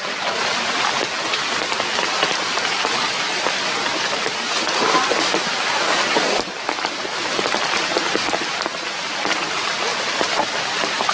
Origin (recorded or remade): recorded